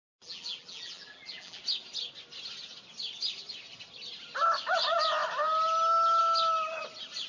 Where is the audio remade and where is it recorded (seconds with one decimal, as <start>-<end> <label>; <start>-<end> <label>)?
0.0-1.6 remade; 1.6-7.3 recorded